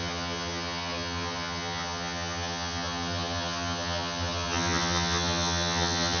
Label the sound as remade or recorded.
remade